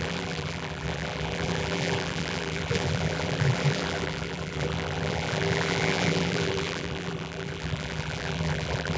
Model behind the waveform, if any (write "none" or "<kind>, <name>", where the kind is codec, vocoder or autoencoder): vocoder, BigVGAN v2